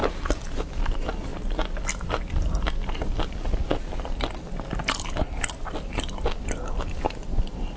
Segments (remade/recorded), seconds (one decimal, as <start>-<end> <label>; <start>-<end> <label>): 0.0-7.8 recorded